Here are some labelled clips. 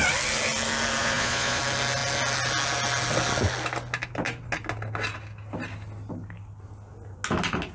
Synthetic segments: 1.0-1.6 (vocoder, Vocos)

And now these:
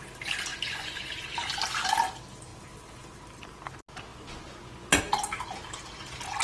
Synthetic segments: 0.5-1.0 (vocoder, Vocos); 4.1-5.0